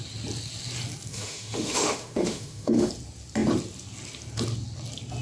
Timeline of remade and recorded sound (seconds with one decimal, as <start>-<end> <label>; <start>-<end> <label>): 0.0-1.1 recorded; 1.1-2.9 remade; 2.9-5.2 recorded

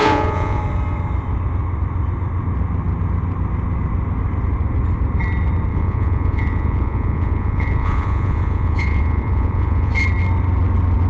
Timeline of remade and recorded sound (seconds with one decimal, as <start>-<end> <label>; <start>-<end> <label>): 0.0-0.6 remade; 0.6-5.7 recorded; 5.7-9.9 remade; 9.9-11.1 recorded

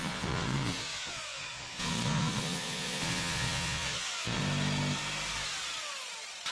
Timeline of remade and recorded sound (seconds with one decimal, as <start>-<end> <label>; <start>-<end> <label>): 0.0-4.4 remade; 4.4-6.5 recorded

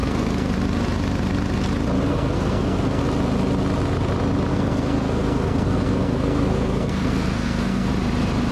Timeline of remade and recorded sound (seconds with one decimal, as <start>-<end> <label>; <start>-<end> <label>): 0.0-0.5 remade; 0.5-2.1 recorded; 2.1-3.0 remade; 3.0-4.5 recorded; 4.5-7.9 remade; 7.9-8.5 recorded

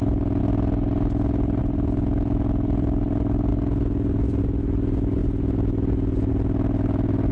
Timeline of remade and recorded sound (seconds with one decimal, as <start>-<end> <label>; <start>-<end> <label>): 0.0-7.3 recorded

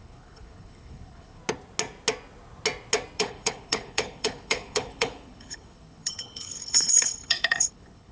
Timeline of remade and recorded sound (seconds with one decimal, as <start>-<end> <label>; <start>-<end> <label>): 0.0-1.4 remade; 1.4-3.2 recorded; 3.2-8.1 remade

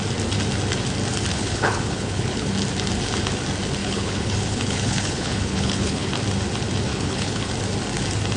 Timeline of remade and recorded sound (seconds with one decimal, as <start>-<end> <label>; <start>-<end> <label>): 0.0-1.3 recorded; 1.3-2.5 remade; 2.5-3.8 recorded; 3.8-6.1 remade; 6.1-6.9 recorded; 6.9-7.5 remade; 7.5-8.4 recorded

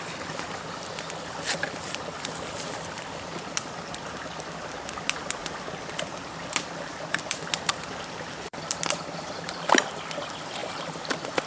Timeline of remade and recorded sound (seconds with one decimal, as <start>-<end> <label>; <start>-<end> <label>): 0.0-5.4 remade; 5.4-6.2 recorded; 6.2-11.5 remade